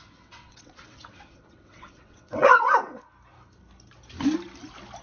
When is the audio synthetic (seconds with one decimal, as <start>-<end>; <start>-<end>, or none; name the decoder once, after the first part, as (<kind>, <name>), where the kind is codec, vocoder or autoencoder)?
0.0-3.0 (vocoder, WaveNeXt)